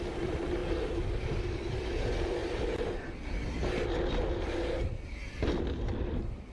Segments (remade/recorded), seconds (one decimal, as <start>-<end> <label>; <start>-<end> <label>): 0.0-6.5 recorded